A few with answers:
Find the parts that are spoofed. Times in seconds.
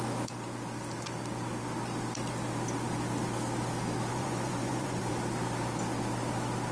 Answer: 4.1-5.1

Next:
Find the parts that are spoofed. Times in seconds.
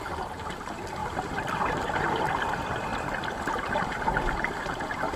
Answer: 0.0-5.2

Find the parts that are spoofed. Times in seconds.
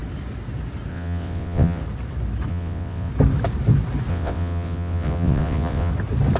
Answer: 0.9-1.8; 2.5-3.1; 4.1-5.9